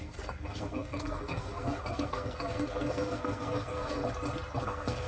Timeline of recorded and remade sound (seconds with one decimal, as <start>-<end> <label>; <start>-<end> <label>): 0.0-4.0 remade; 4.0-4.6 recorded; 4.6-5.1 remade